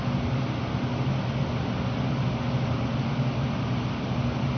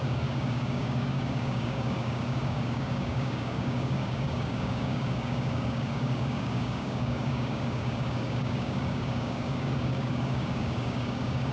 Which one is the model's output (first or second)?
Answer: second